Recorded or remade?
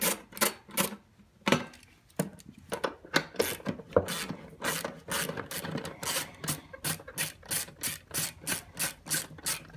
recorded